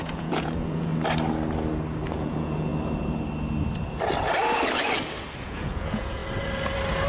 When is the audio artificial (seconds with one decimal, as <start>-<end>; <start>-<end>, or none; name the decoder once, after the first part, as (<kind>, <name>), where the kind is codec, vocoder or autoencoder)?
0.0-0.9 (vocoder, Vocos); 2.1-2.7; 5.4-6.2